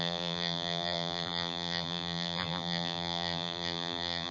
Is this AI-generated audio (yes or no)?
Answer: yes